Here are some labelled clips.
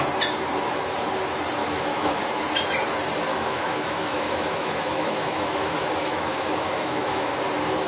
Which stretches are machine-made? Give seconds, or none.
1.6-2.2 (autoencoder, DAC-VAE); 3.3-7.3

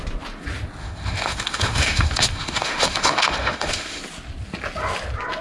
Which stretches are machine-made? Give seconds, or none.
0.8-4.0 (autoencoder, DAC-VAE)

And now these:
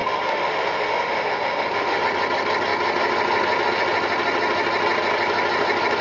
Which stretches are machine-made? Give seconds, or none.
0.0-2.0 (autoencoder, DAC-VAE)